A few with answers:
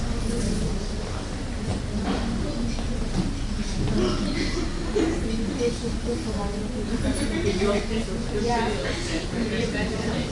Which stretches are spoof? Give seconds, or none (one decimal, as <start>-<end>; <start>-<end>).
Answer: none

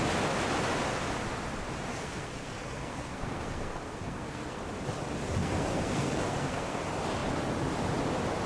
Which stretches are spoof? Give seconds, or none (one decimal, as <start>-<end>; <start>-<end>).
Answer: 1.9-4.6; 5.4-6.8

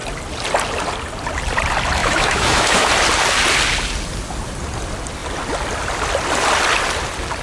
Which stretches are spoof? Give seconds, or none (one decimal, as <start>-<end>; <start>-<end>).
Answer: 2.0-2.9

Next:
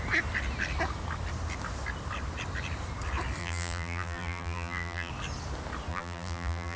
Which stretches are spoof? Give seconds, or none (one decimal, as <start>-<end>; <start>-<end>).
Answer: 3.4-5.1; 5.9-6.8

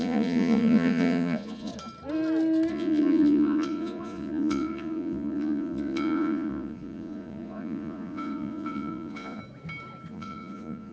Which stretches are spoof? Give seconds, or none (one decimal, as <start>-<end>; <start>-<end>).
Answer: 0.0-1.7; 2.7-9.4; 10.1-10.9

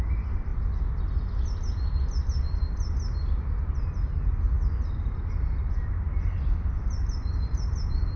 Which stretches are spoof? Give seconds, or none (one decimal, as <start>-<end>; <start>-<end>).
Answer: none

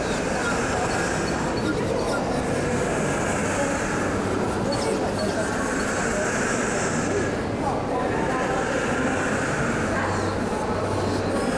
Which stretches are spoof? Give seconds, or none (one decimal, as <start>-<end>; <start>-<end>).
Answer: none

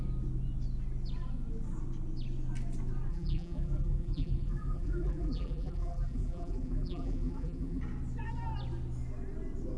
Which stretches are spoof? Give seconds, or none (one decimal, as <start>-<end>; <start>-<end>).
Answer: 3.1-7.8